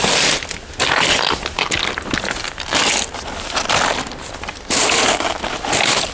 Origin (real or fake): real